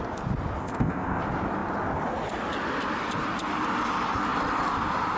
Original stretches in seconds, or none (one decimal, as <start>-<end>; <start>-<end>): 0.0-0.6; 1.2-5.2